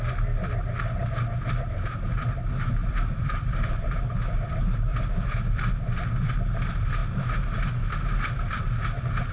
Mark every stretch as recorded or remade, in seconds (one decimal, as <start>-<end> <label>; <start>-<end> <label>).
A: 0.0-2.8 recorded; 2.8-4.5 remade; 4.5-4.9 recorded; 4.9-6.3 remade; 6.3-9.3 recorded